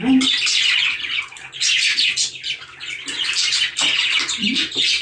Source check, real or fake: real